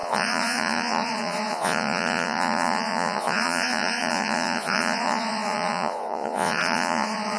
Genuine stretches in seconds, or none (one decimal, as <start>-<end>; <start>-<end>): none